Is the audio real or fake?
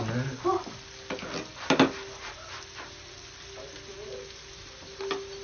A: real